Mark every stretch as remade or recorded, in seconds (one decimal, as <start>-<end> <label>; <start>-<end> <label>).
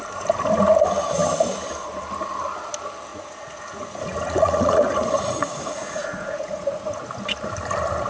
0.0-3.1 recorded; 3.1-7.0 remade; 7.0-8.1 recorded